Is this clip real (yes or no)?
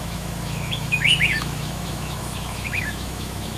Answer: no